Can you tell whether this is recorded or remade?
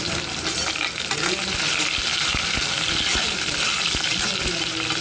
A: recorded